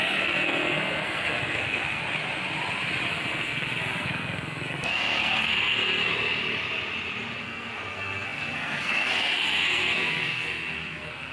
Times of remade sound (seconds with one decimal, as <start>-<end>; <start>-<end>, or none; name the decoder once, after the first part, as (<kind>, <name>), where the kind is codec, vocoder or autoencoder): 0.0-2.0 (codec, SNAC); 3.1-6.1; 7.4-11.3